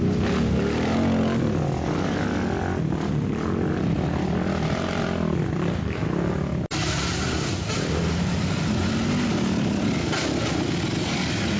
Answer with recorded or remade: recorded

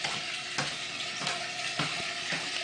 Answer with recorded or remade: recorded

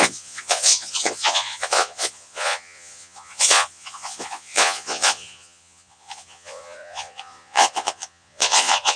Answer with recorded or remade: remade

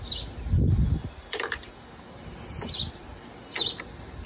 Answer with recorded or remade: recorded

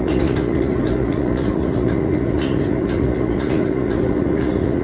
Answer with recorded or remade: remade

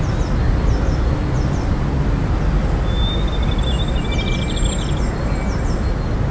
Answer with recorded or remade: recorded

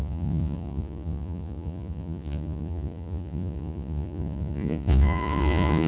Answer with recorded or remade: remade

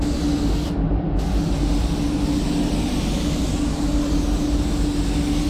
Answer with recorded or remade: recorded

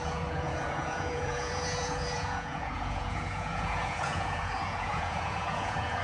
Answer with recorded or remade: remade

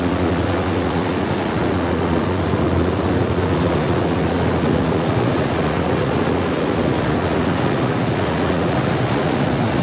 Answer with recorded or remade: remade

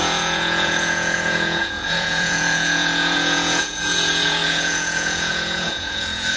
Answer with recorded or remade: remade